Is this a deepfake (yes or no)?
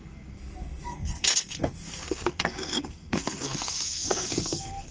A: yes